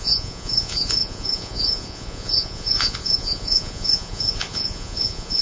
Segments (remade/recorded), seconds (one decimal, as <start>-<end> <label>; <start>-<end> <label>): 0.0-5.4 remade